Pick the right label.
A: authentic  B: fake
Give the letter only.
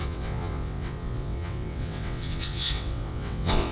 B